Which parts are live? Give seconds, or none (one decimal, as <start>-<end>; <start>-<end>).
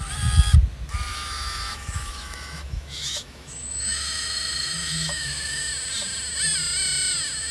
0.0-1.1; 5.6-7.5